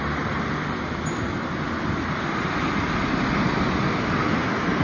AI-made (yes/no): no